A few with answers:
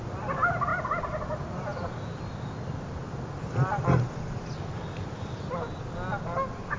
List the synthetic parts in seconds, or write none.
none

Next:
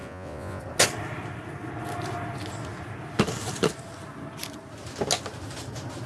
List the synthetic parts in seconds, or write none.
0.0-0.6 (vocoder, Vocos)